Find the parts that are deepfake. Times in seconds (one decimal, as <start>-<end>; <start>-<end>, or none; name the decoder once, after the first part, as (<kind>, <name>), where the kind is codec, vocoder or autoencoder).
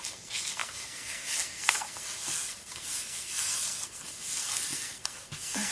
0.0-5.7 (codec, SNAC)